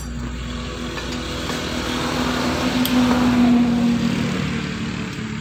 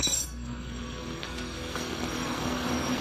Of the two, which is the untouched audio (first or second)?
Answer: first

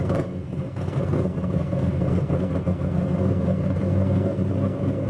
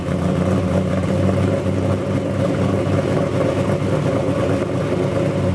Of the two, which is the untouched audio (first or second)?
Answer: second